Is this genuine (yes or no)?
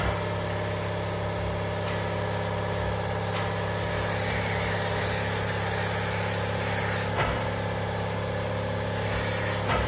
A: yes